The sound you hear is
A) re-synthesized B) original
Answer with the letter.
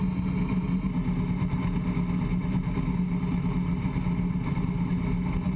B